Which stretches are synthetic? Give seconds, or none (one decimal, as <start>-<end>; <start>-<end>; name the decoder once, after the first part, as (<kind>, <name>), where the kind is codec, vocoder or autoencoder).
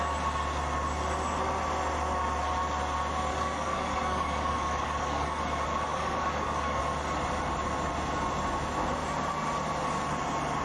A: 3.3-5.4 (codec, DAC); 5.9-6.8